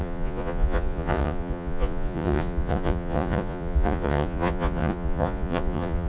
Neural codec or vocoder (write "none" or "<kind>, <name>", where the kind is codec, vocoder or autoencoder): vocoder, Vocos